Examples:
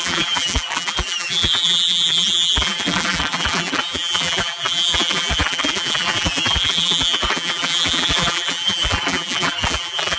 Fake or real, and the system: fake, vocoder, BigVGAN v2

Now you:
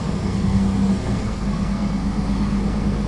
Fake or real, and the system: fake, codec, SNAC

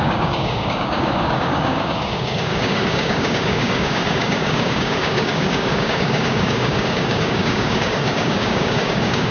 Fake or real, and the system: fake, codec, DAC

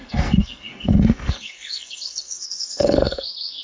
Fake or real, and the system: fake, codec, SNAC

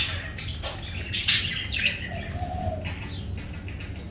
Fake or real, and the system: real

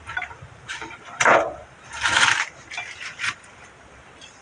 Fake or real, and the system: fake, vocoder, BigVGAN v2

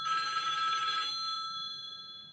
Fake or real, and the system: fake, vocoder, BigVGAN v2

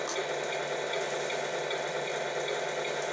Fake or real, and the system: real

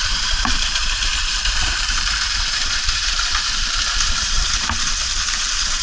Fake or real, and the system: fake, vocoder, BigVGAN v2